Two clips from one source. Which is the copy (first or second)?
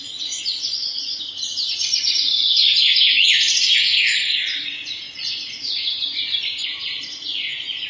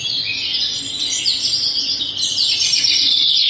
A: first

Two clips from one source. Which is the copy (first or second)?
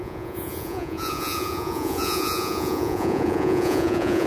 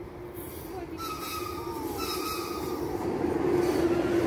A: first